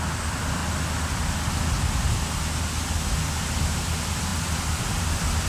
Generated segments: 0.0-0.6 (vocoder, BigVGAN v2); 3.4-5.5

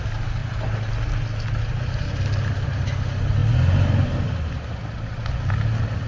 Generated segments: none

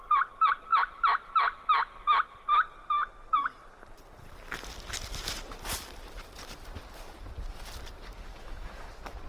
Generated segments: 8.3-8.9 (autoencoder, DAC-VAE)

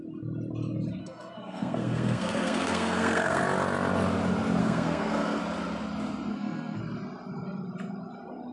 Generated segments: 1.0-3.4 (codec, SNAC); 4.6-5.4; 6.3-6.8

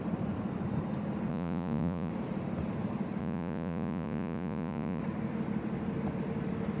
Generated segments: 1.3-2.1 (vocoder, Vocos); 3.2-5.0

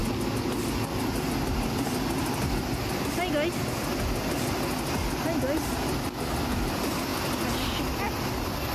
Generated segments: none

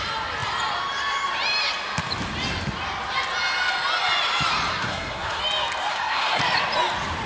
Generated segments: 4.7-5.4 (codec, SNAC); 5.9-6.4

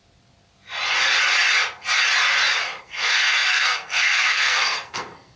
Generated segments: 2.8-5.4 (codec, SNAC)